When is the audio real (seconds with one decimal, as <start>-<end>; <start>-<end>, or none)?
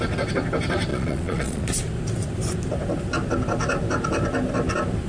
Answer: 0.0-0.9; 1.6-5.1